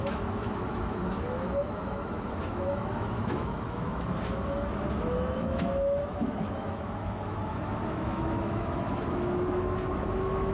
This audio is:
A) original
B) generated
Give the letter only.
B